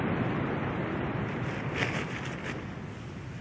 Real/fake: real